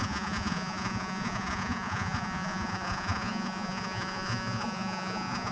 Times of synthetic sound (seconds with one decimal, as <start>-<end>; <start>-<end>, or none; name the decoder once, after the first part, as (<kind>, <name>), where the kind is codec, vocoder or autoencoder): 0.0-5.5 (vocoder, Vocos)